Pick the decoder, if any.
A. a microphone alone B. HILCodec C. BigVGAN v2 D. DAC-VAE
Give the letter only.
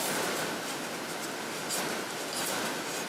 A